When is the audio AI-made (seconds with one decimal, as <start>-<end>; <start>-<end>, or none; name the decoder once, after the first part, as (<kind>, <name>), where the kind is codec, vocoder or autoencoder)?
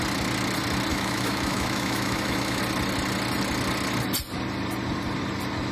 0.9-2.6 (autoencoder, DAC-VAE)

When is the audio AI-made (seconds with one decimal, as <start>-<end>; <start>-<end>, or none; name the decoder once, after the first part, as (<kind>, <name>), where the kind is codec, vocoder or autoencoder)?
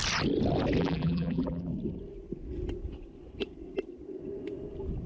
0.8-1.7 (vocoder, BigVGAN v2)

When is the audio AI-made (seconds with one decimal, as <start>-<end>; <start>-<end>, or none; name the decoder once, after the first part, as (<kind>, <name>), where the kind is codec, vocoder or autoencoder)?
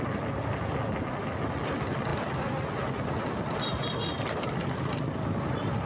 none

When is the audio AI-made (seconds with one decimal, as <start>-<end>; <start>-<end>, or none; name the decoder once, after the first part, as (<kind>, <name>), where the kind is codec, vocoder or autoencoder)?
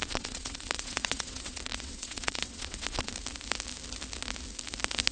0.0-3.1 (vocoder, WaveNeXt)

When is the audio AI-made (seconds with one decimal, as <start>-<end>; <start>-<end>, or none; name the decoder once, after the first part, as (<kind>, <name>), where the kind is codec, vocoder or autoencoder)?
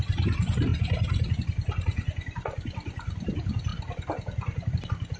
none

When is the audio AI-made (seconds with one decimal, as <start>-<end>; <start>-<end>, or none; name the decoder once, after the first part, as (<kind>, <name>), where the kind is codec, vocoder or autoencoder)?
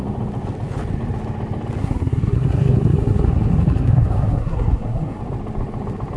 1.8-5.2 (codec, SNAC)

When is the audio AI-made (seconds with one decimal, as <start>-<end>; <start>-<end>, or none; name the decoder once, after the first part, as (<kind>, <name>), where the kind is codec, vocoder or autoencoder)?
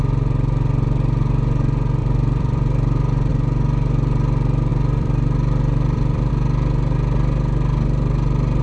2.0-3.3 (vocoder, BigVGAN v2); 4.7-6.3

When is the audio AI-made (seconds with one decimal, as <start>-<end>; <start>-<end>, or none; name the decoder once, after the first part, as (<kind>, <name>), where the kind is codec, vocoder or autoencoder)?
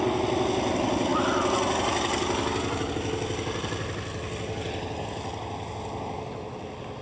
none